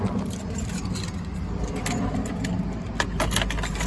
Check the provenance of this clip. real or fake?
real